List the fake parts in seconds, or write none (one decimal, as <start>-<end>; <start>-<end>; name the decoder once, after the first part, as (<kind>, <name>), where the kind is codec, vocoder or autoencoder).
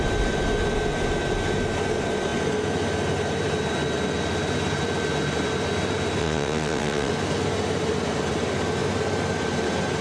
6.2-7.1 (vocoder, WaveNeXt)